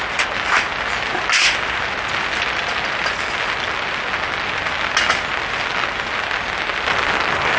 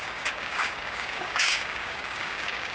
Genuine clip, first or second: first